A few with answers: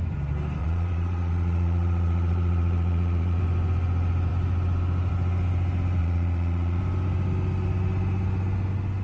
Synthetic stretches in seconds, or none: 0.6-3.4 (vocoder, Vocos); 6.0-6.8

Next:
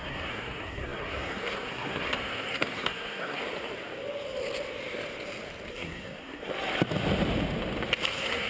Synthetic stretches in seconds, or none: 0.0-3.4 (codec, SNAC); 5.7-6.5; 8.1-8.5

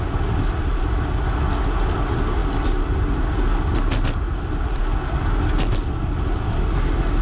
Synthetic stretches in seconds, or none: none

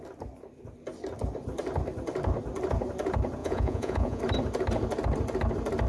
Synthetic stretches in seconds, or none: 3.4-4.2 (vocoder, Vocos)